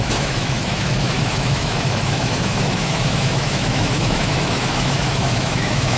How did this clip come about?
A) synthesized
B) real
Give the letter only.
A